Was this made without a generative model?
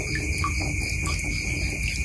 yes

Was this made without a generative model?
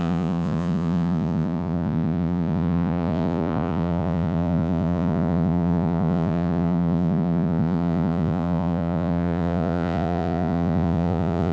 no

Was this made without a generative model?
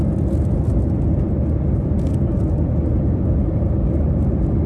yes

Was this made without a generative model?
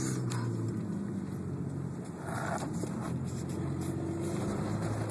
yes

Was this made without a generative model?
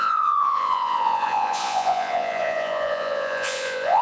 no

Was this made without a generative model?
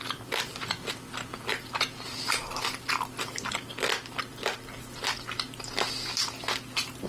yes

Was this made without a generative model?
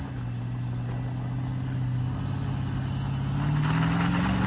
yes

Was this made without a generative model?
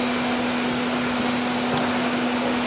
yes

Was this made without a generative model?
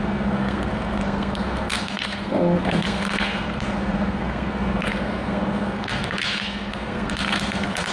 no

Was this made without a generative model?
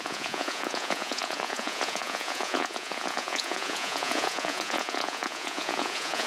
no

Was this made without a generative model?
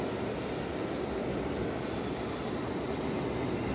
yes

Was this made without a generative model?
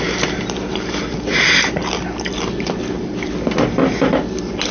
yes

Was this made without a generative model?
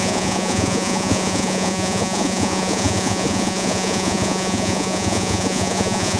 no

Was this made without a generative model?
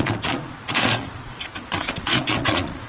no